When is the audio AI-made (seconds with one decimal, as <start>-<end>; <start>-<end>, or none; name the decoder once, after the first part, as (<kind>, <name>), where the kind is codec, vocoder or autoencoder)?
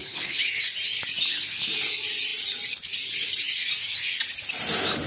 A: 0.0-0.5 (codec, HILCodec)